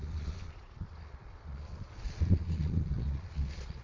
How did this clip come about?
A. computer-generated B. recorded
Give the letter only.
A